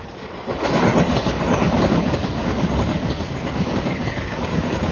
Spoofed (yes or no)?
yes